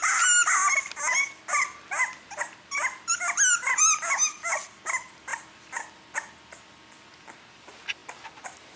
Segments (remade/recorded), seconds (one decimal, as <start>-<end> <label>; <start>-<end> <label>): 0.0-8.8 recorded